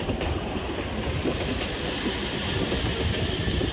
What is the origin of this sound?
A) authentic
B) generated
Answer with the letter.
A